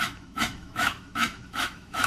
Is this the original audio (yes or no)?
no